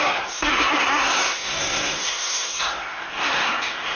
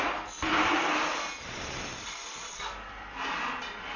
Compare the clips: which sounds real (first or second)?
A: second